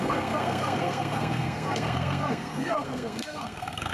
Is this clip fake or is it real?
fake